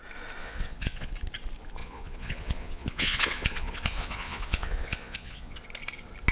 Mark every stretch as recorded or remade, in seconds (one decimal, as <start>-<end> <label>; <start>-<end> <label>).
0.0-0.4 recorded; 0.4-1.1 remade; 1.1-1.8 recorded; 1.8-5.6 remade; 5.6-6.3 recorded